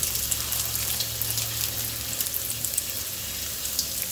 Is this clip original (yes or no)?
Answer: yes